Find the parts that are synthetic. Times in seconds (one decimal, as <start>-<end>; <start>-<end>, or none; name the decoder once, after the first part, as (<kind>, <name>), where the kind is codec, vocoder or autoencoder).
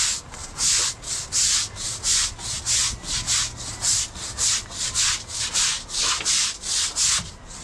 none